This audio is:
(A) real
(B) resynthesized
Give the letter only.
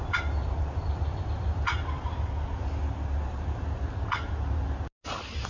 A